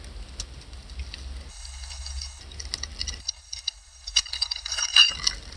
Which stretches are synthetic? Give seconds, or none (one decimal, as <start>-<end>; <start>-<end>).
1.5-2.4; 3.2-5.1